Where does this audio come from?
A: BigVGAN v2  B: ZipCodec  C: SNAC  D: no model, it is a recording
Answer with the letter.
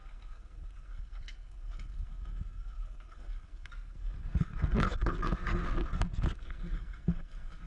C